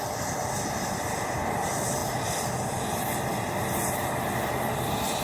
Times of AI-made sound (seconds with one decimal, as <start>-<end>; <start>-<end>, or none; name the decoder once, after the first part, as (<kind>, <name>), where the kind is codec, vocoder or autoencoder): none